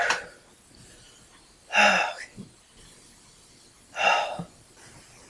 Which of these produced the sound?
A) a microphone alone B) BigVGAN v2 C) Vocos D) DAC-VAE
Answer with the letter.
A